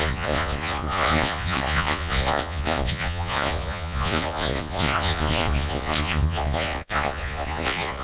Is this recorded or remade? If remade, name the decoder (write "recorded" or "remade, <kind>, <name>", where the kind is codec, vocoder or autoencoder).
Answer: remade, vocoder, Vocos